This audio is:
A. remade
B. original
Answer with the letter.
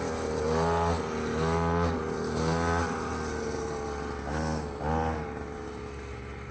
B